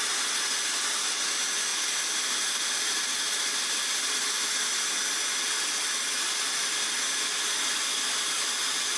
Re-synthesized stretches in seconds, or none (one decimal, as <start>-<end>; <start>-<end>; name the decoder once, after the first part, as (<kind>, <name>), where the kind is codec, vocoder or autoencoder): none